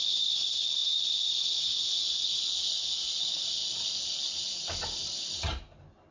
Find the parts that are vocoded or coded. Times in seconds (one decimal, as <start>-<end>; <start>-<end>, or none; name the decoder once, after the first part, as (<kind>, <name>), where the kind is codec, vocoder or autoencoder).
none